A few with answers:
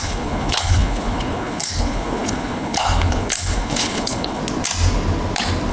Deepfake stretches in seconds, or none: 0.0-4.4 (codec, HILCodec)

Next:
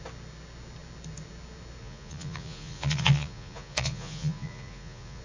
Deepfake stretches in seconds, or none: 1.8-5.2 (vocoder, Vocos)

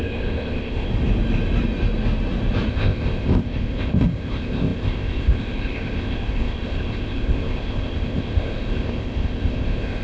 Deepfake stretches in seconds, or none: 0.0-0.9 (codec, ZipCodec); 2.7-10.0

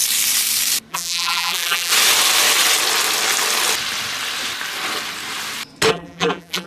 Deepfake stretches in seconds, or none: 0.9-1.9 (vocoder, BigVGAN v2); 5.9-6.7

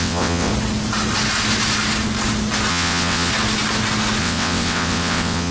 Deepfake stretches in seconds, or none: 0.0-0.5 (vocoder, WaveNeXt); 2.7-3.3; 4.2-5.5

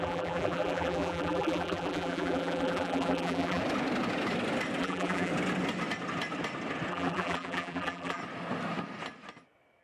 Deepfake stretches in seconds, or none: 0.0-3.6 (vocoder, BigVGAN v2); 4.8-5.3; 6.9-8.2

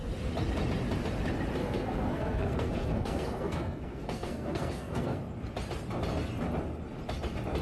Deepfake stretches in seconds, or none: 1.6-5.2 (codec, SNAC)

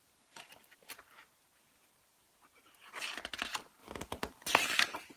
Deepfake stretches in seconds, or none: none